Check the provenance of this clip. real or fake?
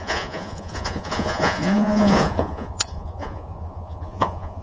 fake